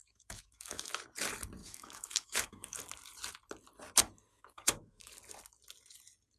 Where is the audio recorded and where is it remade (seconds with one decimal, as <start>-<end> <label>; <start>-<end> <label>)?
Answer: 0.0-0.9 remade; 0.9-1.6 recorded; 1.6-2.8 remade; 2.8-4.3 recorded; 4.3-5.1 remade; 5.1-6.4 recorded